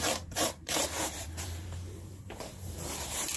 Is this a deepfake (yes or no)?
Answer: yes